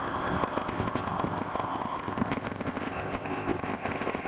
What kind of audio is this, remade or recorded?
remade